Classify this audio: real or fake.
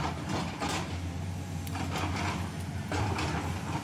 real